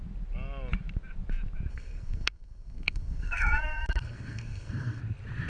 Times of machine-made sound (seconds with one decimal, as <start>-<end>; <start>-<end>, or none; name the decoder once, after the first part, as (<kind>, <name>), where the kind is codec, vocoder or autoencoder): 1.7-5.0 (codec, SNAC)

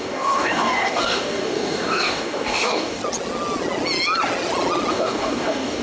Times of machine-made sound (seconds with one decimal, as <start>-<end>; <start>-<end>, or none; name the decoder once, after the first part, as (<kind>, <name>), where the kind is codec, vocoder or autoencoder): 0.0-3.0 (codec, DAC); 4.9-5.8

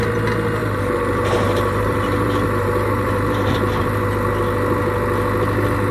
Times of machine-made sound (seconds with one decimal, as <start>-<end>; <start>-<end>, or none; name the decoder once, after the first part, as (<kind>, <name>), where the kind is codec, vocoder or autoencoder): 0.6-4.1 (vocoder, BigVGAN v2)

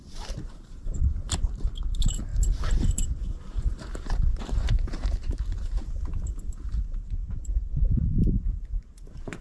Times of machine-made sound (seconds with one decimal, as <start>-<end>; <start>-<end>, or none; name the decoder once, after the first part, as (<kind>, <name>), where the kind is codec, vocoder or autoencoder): 0.0-9.4 (vocoder, BigVGAN v2)

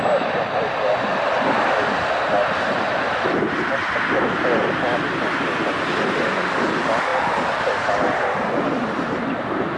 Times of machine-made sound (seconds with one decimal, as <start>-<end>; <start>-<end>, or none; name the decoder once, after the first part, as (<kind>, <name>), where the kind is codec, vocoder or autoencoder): none

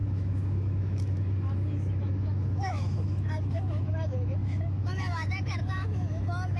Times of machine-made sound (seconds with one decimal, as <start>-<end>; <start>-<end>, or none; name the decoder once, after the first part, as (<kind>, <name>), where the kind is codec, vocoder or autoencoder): 0.0-6.6 (autoencoder, DAC-VAE)

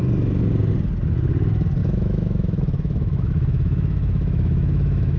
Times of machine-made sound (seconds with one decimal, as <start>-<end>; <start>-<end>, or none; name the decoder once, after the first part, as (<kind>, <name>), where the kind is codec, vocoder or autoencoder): 1.8-5.2 (autoencoder, DAC-VAE)

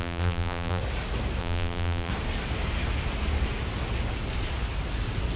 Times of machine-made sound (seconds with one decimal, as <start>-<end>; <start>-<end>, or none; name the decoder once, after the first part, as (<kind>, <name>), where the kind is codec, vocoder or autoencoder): 0.0-0.8 (vocoder, BigVGAN v2); 1.4-2.1